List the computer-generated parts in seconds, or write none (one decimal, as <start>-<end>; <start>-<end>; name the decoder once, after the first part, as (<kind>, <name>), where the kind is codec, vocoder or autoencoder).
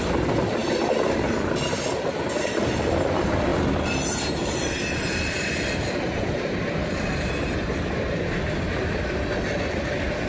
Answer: none